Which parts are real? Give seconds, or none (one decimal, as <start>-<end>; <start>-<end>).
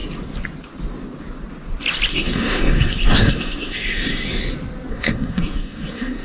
0.0-2.1; 4.4-4.9